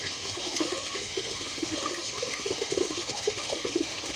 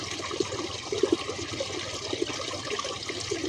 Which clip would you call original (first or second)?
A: second